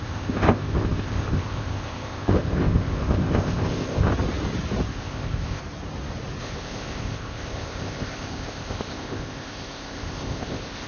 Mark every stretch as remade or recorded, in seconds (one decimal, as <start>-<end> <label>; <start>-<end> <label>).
0.0-4.1 remade; 4.1-4.9 recorded; 4.9-5.6 remade; 5.6-6.4 recorded; 6.4-10.9 remade